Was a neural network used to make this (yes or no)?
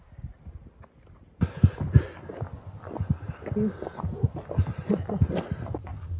no